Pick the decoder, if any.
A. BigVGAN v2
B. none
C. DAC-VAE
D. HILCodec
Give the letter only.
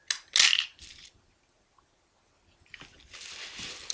B